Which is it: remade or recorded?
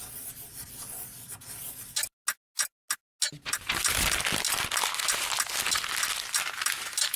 recorded